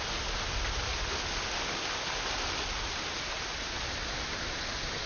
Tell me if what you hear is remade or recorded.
recorded